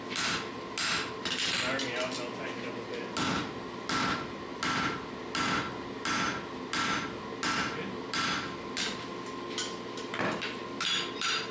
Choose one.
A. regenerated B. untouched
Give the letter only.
B